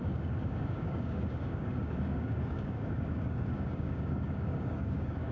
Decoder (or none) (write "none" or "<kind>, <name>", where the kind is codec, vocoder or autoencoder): codec, DAC